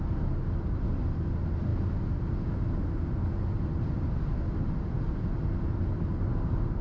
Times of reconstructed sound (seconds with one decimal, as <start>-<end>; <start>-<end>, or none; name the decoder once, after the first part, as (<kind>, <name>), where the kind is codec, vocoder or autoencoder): none